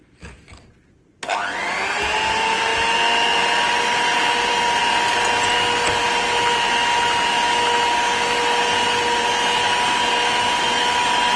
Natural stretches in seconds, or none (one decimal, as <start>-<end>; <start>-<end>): 0.0-11.4